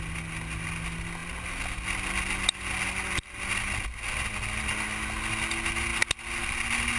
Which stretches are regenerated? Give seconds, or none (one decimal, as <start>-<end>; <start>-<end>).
none